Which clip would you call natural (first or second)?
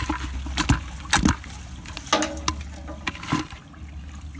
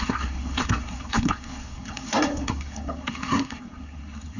first